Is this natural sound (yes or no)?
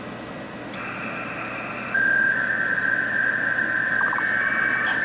yes